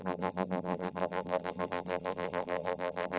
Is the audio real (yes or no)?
no